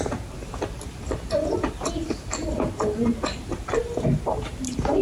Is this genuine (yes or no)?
no